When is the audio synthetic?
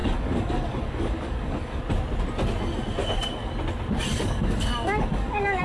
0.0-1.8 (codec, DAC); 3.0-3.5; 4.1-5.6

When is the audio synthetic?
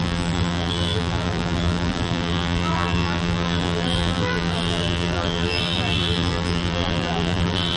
0.0-7.8 (vocoder, BigVGAN v2)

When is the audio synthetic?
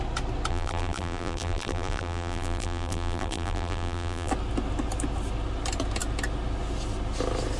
0.5-4.3 (vocoder, BigVGAN v2)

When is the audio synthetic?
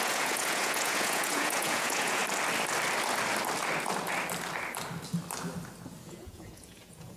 0.0-2.2 (vocoder, Vocos); 6.0-7.2